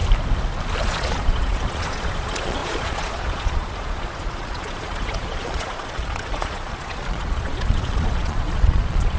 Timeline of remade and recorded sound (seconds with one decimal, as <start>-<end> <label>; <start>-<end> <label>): 0.0-0.8 recorded; 0.8-9.2 remade